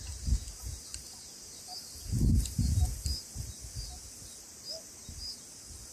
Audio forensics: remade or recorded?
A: recorded